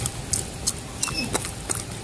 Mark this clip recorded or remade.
recorded